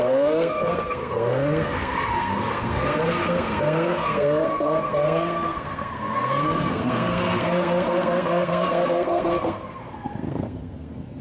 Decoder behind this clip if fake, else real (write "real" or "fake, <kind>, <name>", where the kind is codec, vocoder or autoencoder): fake, codec, SNAC